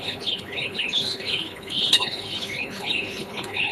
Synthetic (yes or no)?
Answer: yes